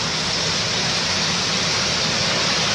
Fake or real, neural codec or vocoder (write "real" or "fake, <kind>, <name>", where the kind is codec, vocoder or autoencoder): real